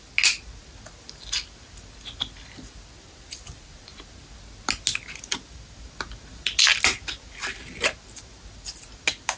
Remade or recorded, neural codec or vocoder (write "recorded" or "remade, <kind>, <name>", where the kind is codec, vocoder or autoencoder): recorded